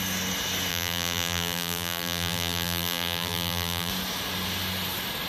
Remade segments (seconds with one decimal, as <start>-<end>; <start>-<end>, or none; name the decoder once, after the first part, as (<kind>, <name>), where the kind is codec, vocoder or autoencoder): 0.7-3.9 (vocoder, BigVGAN v2)